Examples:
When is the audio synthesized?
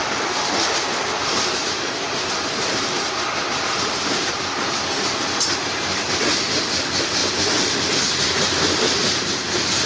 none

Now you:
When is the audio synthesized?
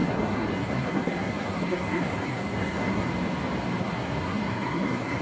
0.0-3.1 (codec, SNAC); 3.8-5.2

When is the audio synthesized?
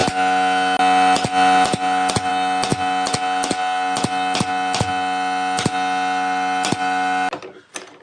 none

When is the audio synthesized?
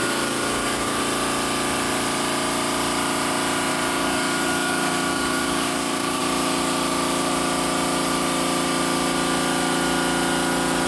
0.0-1.0 (codec, DAC); 3.7-6.2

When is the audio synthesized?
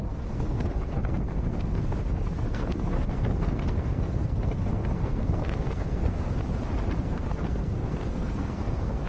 0.0-6.4 (codec, SNAC); 7.0-9.1